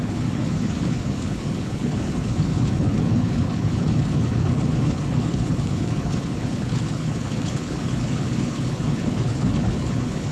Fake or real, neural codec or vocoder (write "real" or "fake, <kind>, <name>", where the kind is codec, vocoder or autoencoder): fake, codec, HILCodec